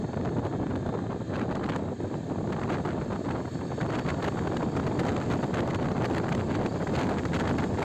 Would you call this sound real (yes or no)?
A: yes